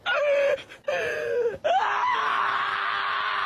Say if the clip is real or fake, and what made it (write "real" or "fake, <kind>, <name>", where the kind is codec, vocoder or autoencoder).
real